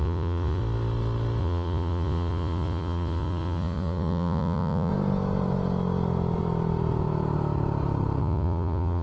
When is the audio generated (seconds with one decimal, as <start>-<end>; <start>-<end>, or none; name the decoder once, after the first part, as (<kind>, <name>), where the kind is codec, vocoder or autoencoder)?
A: 0.0-0.6 (vocoder, Vocos); 1.4-4.9; 8.2-9.0